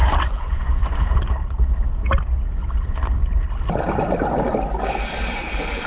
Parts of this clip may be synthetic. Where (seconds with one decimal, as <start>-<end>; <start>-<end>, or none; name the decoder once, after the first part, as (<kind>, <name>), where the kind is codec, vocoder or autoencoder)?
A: 0.0-1.0 (vocoder, Vocos)